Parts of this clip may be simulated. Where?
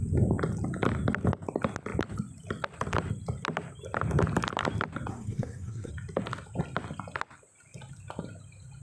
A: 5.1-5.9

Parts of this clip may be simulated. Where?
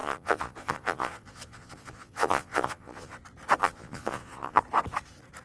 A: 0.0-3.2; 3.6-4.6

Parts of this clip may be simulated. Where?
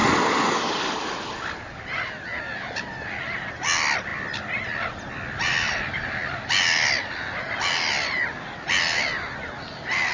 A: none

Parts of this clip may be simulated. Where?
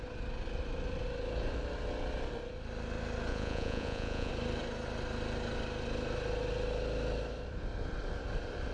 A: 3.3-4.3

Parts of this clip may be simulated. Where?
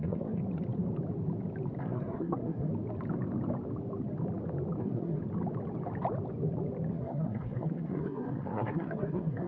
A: 0.0-0.4; 1.8-2.7; 4.8-5.2; 6.9-9.5